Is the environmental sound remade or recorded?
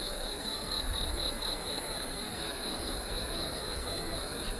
remade